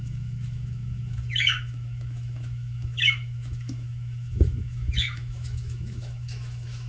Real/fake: fake